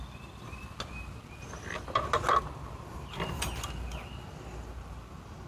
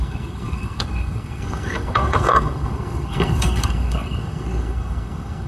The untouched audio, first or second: first